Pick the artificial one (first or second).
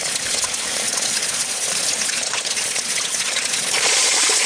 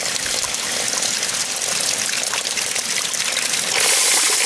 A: first